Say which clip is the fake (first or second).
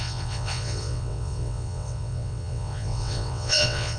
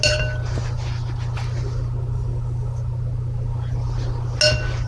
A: first